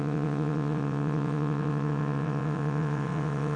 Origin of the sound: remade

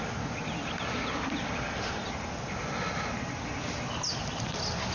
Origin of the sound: recorded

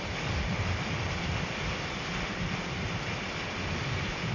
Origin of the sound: recorded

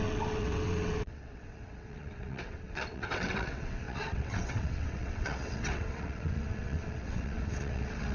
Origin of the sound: remade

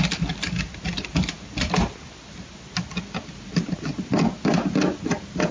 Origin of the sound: recorded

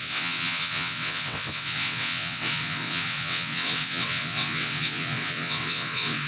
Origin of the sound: remade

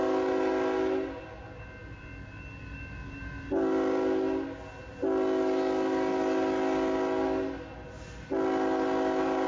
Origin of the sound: recorded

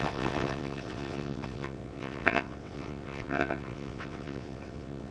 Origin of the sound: remade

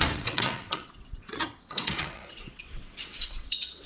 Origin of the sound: remade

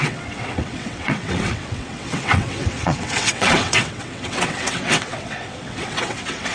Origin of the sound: remade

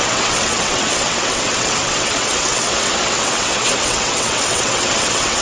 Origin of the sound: remade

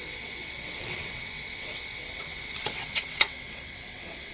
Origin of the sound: remade